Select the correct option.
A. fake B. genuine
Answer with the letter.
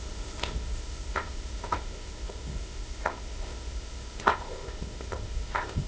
A